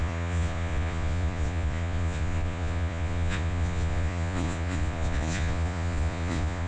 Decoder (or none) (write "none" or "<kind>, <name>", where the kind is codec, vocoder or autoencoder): vocoder, Vocos